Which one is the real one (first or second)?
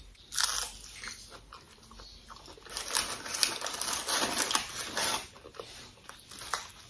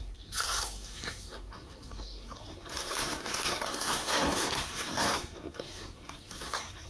first